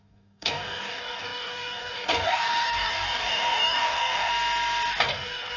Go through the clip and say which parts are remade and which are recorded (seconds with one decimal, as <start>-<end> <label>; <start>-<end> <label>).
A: 0.0-4.3 remade; 4.3-5.0 recorded; 5.0-5.6 remade